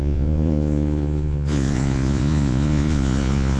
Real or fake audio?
fake